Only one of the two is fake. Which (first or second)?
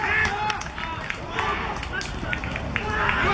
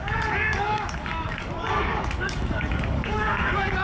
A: second